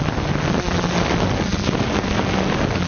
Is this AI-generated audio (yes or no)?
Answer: no